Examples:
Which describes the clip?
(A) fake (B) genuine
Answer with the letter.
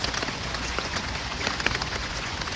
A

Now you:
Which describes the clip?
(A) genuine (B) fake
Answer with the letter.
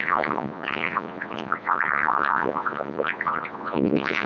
B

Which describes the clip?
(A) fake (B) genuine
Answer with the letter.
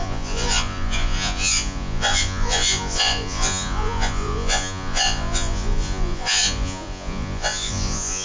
A